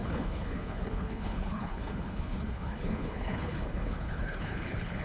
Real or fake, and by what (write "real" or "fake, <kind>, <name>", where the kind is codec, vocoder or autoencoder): fake, codec, HILCodec